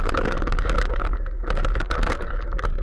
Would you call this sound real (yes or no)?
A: no